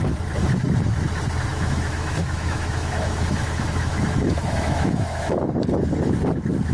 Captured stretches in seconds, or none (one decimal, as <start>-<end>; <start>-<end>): 0.0-1.5; 5.5-6.7